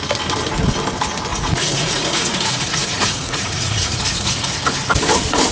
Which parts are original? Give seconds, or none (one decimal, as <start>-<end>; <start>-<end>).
0.0-1.3; 4.6-5.5